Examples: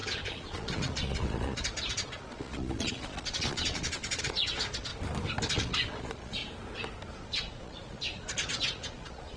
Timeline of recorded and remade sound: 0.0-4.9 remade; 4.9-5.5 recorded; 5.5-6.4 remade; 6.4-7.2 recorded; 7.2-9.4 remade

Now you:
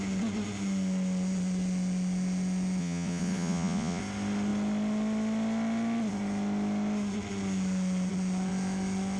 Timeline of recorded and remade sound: 0.0-2.8 recorded; 2.8-4.0 remade; 4.0-9.2 recorded

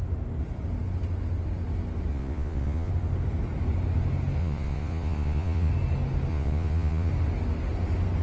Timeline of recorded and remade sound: 0.0-2.1 recorded; 2.1-2.9 remade; 2.9-4.4 recorded; 4.4-5.7 remade; 5.7-6.3 recorded; 6.3-7.1 remade; 7.1-8.2 recorded

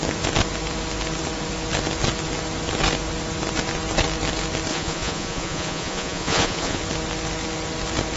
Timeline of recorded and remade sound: 0.0-4.7 recorded; 4.7-6.8 remade; 6.8-8.2 recorded